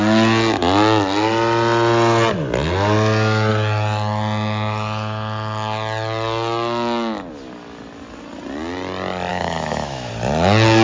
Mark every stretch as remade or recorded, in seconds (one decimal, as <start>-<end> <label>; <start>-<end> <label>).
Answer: 0.0-9.3 recorded; 9.3-10.1 remade; 10.1-10.8 recorded